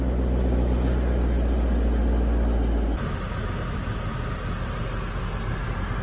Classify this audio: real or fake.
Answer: real